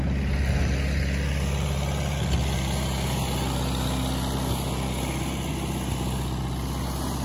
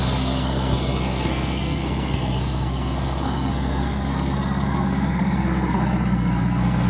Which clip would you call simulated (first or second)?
second